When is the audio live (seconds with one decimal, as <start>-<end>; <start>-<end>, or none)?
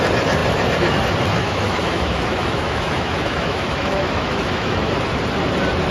0.0-1.4; 4.9-5.9